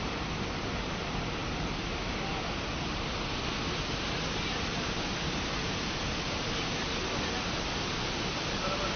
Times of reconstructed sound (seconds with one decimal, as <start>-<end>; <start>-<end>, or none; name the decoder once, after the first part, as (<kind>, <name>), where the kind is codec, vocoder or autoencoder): none